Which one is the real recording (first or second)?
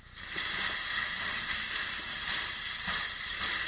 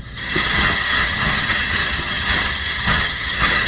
first